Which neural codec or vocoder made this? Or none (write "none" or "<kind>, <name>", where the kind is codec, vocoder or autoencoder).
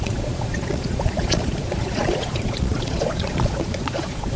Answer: vocoder, Vocos